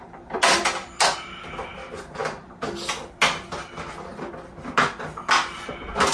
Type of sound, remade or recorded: recorded